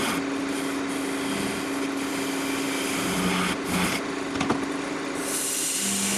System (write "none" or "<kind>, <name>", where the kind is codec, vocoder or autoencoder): none